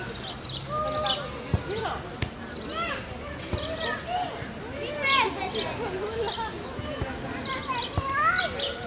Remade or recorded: recorded